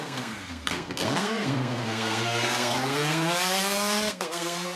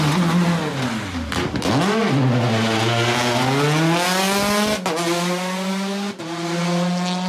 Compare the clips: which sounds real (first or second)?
second